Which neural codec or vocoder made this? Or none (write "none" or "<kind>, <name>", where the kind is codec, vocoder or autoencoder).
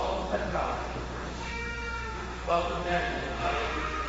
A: autoencoder, DAC-VAE